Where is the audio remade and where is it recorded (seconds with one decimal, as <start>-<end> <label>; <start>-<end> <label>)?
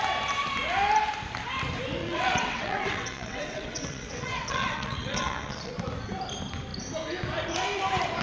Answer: 0.0-2.0 recorded; 2.0-5.7 remade; 5.7-8.2 recorded